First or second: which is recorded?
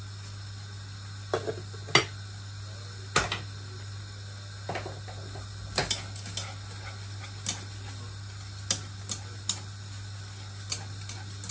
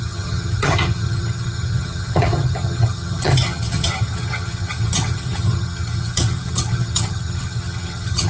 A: first